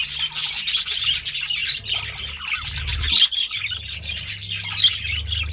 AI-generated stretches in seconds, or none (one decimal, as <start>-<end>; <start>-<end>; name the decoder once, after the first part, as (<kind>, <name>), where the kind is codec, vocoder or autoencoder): none